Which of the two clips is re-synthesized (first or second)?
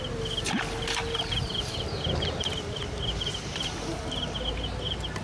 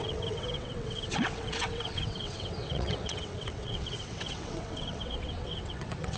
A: second